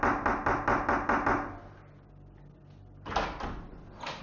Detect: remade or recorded recorded